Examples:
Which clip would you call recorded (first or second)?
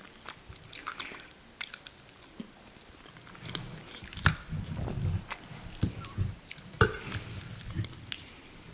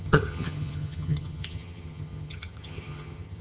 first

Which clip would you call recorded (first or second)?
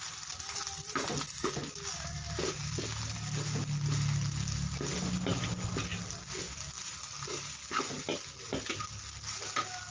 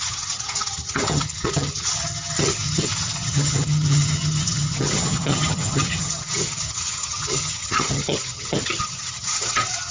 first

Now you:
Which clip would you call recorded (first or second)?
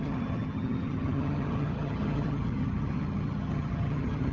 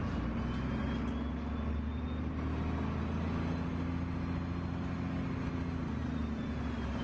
second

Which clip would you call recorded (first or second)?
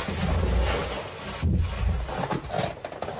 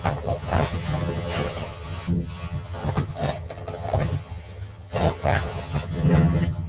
first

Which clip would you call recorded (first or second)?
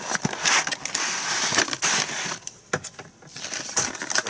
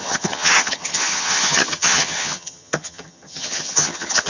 first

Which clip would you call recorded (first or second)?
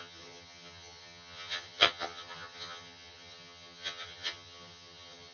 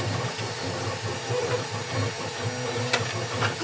second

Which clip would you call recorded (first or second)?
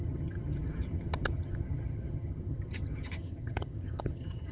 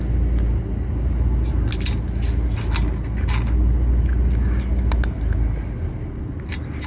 second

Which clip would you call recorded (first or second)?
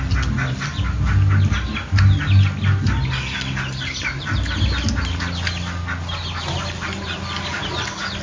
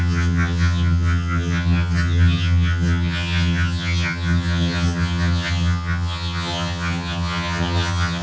first